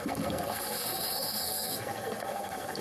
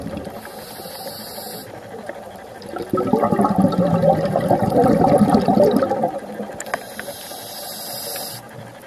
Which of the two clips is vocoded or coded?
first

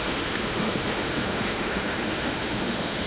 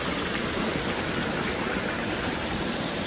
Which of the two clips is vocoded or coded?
first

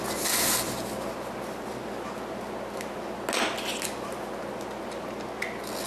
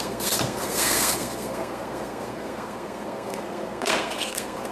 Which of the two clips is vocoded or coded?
second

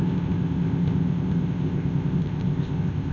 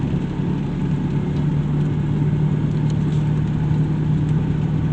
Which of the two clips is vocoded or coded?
first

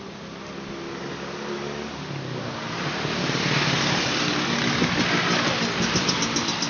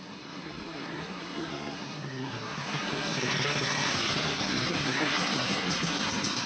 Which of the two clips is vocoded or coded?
second